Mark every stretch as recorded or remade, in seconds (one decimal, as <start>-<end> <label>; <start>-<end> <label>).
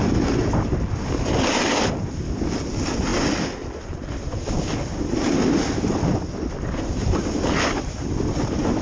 0.0-8.8 recorded